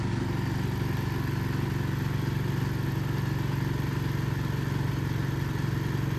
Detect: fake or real real